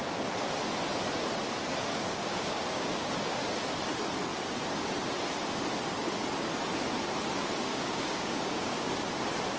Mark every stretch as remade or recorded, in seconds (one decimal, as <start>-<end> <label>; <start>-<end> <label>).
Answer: 0.0-1.9 recorded; 1.9-3.1 remade; 3.1-7.7 recorded; 7.7-8.9 remade; 8.9-9.6 recorded